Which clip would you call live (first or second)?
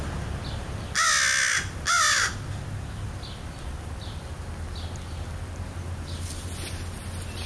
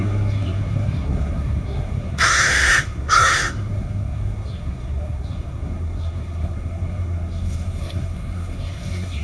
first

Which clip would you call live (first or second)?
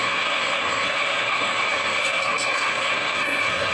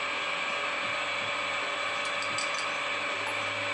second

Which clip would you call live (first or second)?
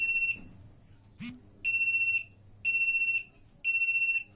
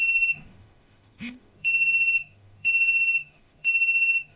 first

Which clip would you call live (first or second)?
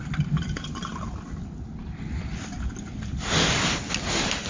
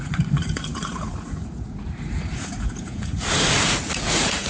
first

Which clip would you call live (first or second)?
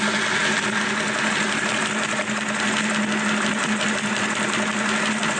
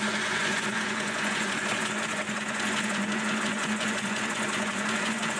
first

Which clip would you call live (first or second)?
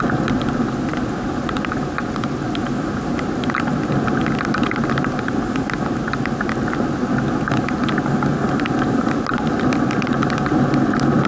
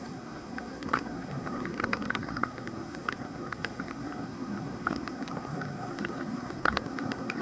first